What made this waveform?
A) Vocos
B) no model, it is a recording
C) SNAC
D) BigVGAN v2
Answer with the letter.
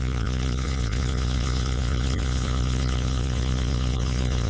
A